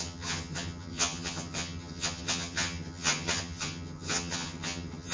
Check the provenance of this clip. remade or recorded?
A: remade